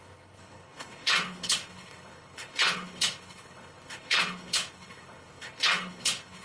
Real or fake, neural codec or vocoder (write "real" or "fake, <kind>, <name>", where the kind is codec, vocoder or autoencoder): fake, codec, HILCodec